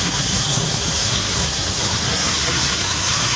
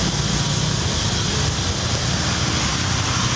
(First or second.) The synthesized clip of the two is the first